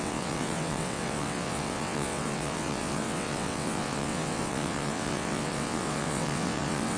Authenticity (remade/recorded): remade